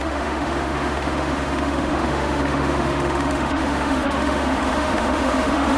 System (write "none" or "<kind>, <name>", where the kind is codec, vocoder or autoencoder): autoencoder, DAC-VAE